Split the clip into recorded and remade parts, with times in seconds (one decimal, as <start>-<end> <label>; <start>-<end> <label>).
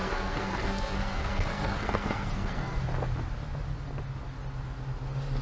0.0-2.8 remade; 2.8-5.4 recorded